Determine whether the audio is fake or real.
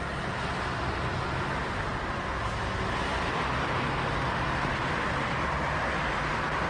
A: real